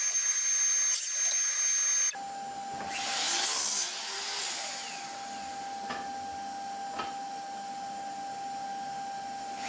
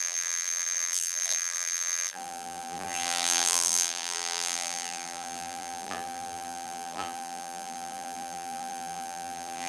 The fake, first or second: second